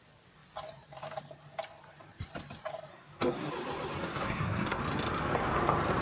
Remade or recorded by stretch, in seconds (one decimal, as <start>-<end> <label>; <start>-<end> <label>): 0.0-2.9 recorded; 2.9-3.5 remade; 3.5-4.1 recorded; 4.1-4.8 remade; 4.8-6.0 recorded

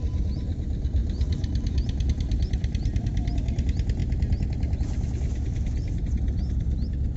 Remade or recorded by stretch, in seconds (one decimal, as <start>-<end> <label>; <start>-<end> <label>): 0.0-7.2 recorded

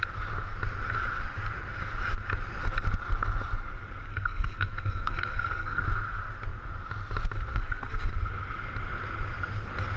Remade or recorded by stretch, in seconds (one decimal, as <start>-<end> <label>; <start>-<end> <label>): 0.0-4.1 recorded; 4.1-5.8 remade; 5.8-7.5 recorded; 7.5-8.1 remade; 8.1-10.0 recorded

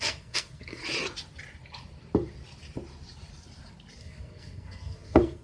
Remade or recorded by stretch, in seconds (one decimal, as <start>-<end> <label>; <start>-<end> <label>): 0.0-0.8 remade; 0.8-4.0 recorded; 4.0-5.4 remade

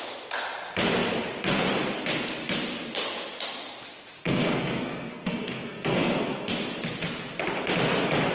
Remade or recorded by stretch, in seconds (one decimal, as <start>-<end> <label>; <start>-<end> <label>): 0.0-4.2 recorded; 4.2-6.5 remade; 6.5-8.3 recorded

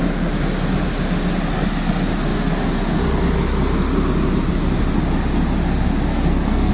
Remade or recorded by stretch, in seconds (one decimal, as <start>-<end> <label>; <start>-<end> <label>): 0.0-6.1 recorded; 6.1-6.7 remade